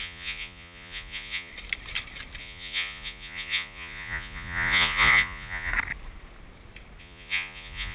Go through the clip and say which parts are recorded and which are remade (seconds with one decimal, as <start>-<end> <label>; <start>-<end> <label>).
0.0-1.5 remade; 1.5-2.4 recorded; 2.4-5.7 remade; 5.7-7.0 recorded; 7.0-7.9 remade